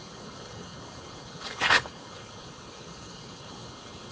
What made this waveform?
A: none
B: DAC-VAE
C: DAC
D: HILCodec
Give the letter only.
D